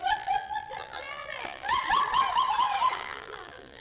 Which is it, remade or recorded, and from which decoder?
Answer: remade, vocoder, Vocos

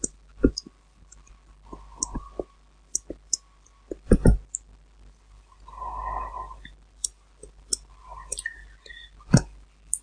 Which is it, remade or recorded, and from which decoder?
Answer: recorded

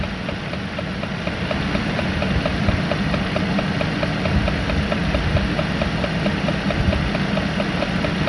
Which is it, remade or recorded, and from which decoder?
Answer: recorded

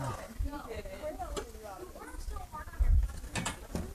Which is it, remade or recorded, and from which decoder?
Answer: recorded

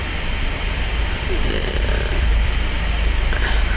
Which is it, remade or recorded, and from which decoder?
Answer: remade, vocoder, BigVGAN v2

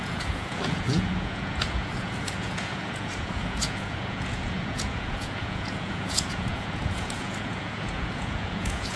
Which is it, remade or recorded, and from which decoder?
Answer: remade, vocoder, Vocos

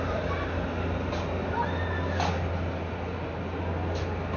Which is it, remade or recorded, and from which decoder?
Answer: recorded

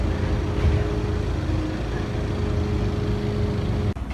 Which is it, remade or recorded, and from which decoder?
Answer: recorded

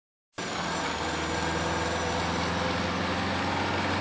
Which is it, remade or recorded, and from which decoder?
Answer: recorded